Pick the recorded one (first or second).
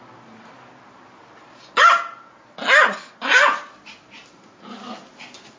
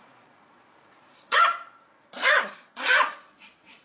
first